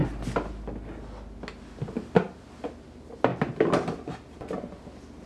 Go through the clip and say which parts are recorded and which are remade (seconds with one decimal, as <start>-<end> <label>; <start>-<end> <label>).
0.0-5.3 recorded

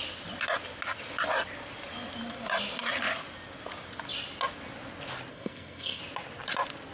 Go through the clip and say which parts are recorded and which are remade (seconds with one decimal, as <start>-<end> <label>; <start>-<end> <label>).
0.0-5.3 recorded; 5.3-6.0 remade; 6.0-6.9 recorded

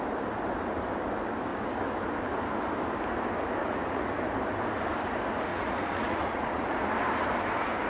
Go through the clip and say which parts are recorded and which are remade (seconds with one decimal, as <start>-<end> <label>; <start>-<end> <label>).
0.0-3.6 recorded; 3.6-4.2 remade; 4.2-5.5 recorded; 5.5-6.8 remade; 6.8-7.9 recorded

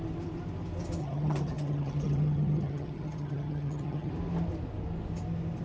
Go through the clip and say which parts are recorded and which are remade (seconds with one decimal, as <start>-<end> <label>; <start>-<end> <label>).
0.0-1.0 recorded; 1.0-4.1 remade; 4.1-5.6 recorded